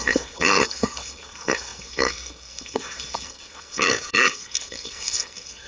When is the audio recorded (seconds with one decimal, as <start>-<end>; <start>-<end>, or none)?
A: none